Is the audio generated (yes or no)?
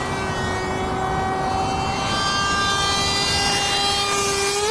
no